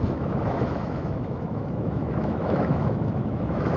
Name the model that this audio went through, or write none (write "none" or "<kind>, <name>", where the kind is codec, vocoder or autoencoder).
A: autoencoder, DAC-VAE